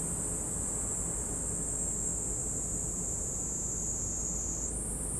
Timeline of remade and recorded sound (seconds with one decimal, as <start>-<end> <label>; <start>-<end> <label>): 0.0-2.4 recorded; 2.4-4.0 remade; 4.0-5.2 recorded